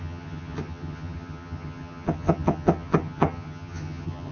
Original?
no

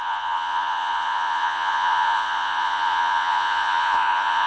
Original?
no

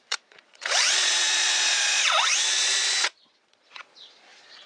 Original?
no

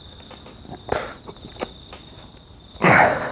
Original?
yes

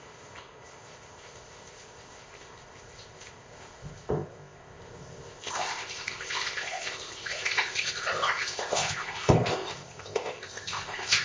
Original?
no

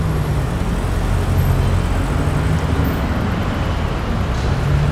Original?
yes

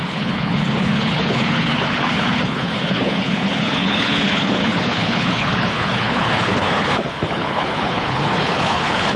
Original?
no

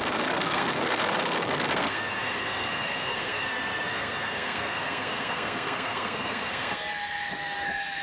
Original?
no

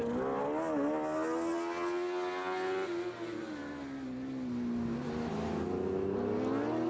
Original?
yes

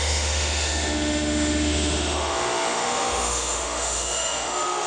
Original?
no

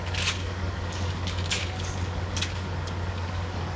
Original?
no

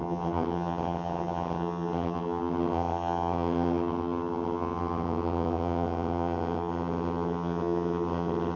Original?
no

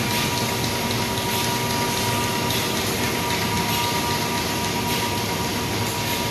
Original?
yes